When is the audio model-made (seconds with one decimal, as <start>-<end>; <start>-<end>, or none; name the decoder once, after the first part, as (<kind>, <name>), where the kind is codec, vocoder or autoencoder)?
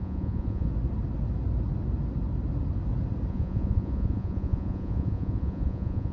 0.0-0.7 (vocoder, Vocos); 3.3-6.1